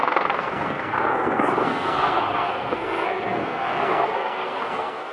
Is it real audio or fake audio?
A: fake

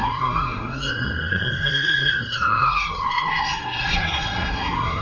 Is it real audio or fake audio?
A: fake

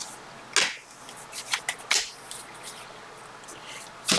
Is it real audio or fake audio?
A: real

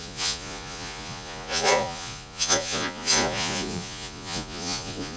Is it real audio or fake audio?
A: fake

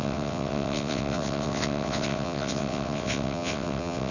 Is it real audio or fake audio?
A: fake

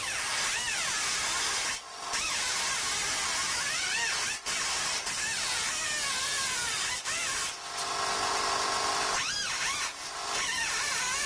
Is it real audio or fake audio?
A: fake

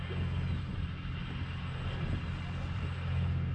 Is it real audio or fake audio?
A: real